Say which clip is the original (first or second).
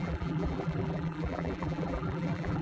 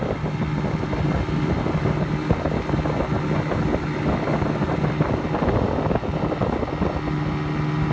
second